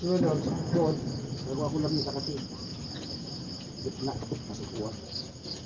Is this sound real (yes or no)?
yes